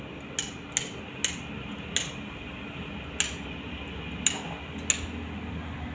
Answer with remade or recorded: recorded